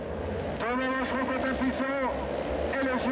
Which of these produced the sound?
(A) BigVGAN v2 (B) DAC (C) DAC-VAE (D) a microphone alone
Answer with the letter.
D